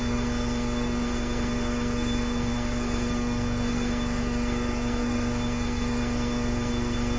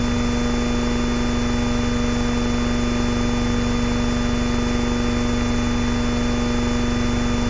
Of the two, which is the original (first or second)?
second